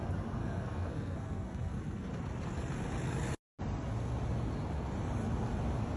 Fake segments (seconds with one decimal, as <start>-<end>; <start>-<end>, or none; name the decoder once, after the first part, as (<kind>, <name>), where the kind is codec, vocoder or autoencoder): 0.4-2.1 (codec, SNAC)